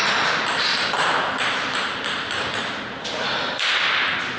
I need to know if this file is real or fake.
real